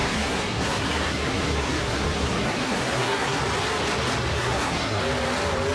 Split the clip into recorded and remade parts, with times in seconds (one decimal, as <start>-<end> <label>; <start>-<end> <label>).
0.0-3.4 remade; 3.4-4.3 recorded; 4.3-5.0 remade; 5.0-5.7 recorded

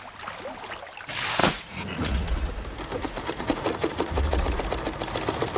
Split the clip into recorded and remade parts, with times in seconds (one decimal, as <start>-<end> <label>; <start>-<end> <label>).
0.0-1.4 recorded; 1.4-2.5 remade; 2.5-3.0 recorded; 3.0-4.6 remade; 4.6-5.6 recorded

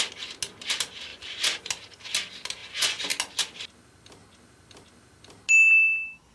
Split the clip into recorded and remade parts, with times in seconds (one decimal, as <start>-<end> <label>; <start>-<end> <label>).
0.0-1.1 recorded; 1.1-1.7 remade; 1.7-2.6 recorded; 2.6-3.1 remade; 3.1-6.3 recorded

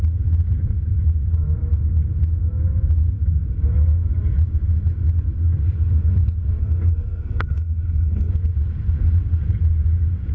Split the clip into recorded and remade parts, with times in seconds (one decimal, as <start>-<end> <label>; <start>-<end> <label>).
0.0-6.6 recorded; 6.6-8.3 remade; 8.3-10.3 recorded

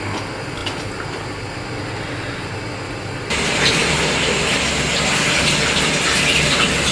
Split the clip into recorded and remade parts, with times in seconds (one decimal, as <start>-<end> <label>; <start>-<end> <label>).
0.0-6.9 recorded

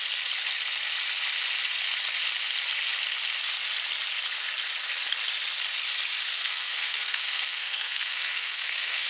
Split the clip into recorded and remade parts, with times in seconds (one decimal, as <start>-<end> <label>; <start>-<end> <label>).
0.0-6.3 recorded; 6.3-9.1 remade

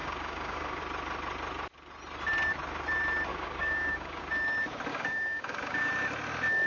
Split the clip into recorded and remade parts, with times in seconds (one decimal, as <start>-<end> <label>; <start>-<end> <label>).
0.0-0.8 remade; 0.8-3.3 recorded; 3.3-4.2 remade; 4.2-4.9 recorded; 4.9-5.9 remade; 5.9-6.7 recorded

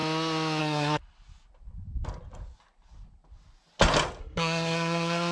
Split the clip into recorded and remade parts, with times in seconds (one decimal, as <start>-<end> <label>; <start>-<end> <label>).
0.0-0.6 recorded; 0.6-1.0 remade; 1.0-4.2 recorded; 4.2-5.3 remade